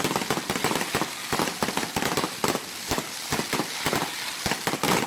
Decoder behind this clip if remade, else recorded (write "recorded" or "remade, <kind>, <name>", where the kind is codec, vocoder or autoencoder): recorded